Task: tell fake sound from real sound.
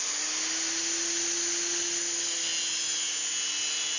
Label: real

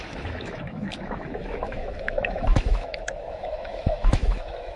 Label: fake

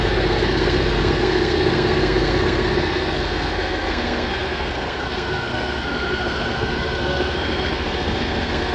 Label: fake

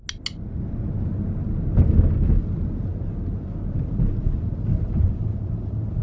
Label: real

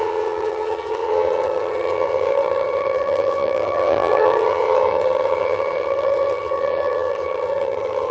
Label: fake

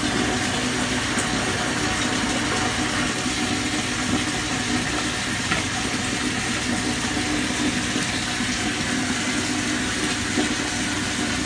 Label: real